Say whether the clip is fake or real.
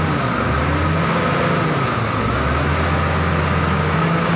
real